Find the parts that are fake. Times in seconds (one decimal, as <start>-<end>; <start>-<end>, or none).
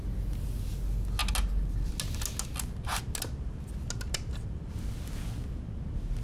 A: none